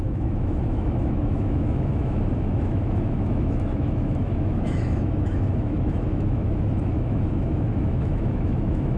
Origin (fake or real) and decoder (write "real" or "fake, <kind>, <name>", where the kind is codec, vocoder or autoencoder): fake, autoencoder, DAC-VAE